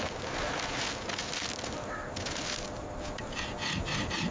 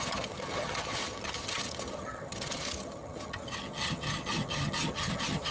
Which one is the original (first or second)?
first